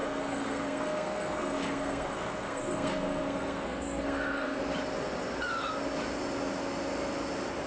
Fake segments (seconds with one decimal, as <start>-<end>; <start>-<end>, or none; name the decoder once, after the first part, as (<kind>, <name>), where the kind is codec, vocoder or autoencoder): 0.0-4.6 (codec, SNAC)